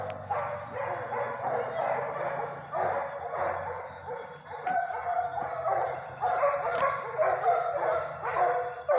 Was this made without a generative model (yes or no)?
yes